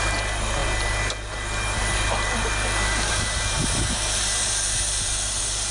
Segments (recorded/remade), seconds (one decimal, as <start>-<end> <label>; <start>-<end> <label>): 0.0-5.7 recorded